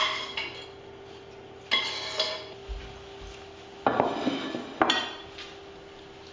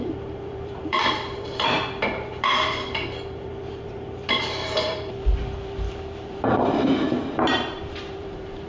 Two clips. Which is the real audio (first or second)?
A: first